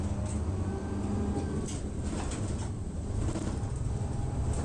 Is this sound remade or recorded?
recorded